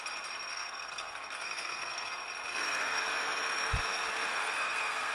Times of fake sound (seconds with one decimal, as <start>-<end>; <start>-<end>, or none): 0.5-2.1; 2.5-3.0; 4.3-5.1